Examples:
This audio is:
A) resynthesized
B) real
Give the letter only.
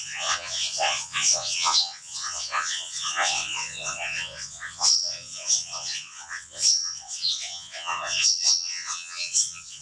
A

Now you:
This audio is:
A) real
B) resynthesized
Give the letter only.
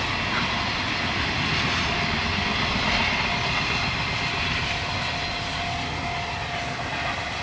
A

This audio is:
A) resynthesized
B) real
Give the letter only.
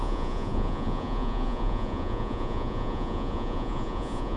A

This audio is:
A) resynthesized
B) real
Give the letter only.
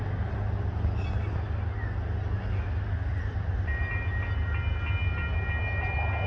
B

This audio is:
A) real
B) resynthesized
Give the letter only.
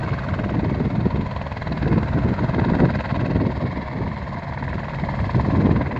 A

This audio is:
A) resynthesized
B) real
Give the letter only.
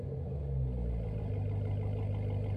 B